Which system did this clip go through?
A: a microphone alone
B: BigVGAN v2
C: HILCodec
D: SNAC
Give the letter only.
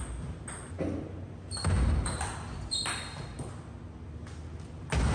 A